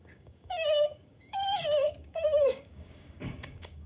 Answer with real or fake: fake